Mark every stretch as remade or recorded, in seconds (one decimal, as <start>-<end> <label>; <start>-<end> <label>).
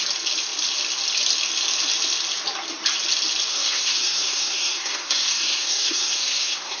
0.0-3.5 recorded; 3.5-6.8 remade